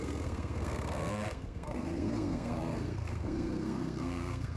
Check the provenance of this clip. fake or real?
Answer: fake